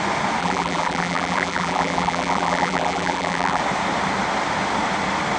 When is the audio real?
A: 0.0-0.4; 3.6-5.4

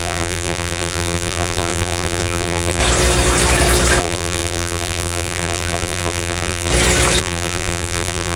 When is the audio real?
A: 2.8-4.0; 6.7-7.2

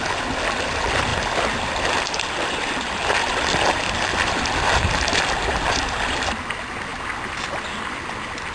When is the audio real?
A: 0.0-8.5

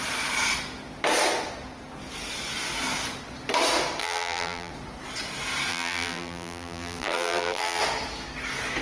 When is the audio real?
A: 0.0-4.0; 4.7-5.7; 7.8-8.8

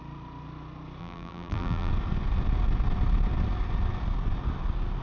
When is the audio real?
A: 0.0-1.0; 1.9-5.0

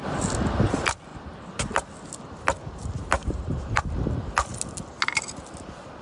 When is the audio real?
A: 0.0-3.2; 3.8-6.0

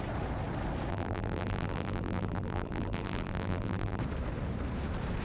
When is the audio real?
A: 0.0-0.9; 4.0-5.2